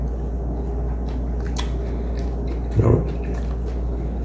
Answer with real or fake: real